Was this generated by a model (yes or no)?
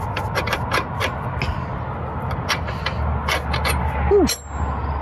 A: no